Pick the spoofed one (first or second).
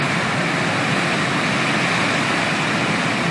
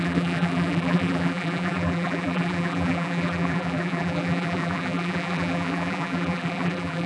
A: second